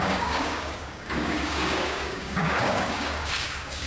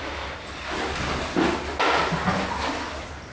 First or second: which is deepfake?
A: first